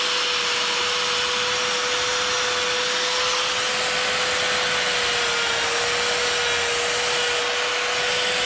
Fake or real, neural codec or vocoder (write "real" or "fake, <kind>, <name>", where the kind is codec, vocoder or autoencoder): real